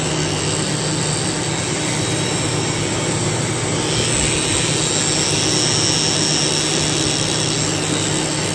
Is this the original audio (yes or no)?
yes